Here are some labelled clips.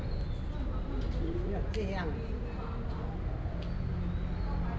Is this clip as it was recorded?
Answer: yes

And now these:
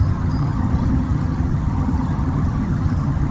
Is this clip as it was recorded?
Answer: no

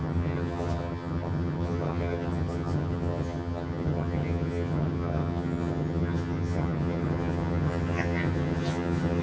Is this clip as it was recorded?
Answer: no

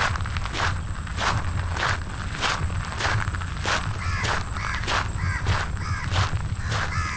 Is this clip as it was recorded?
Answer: yes